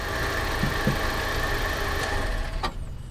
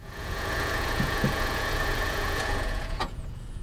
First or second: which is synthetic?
second